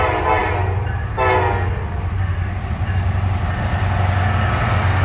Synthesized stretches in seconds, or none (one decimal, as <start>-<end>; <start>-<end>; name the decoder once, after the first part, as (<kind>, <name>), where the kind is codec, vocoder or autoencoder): none